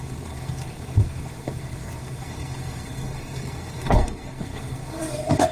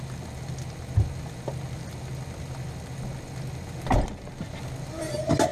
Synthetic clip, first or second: first